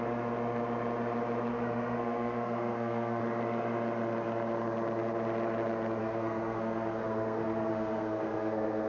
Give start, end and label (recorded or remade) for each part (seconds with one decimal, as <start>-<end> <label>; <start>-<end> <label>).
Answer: 0.0-1.5 recorded; 1.5-3.2 remade; 3.2-6.0 recorded; 6.0-8.9 remade